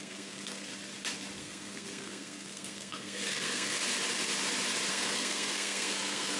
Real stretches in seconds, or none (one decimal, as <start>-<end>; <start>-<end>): 0.7-1.4; 3.8-4.9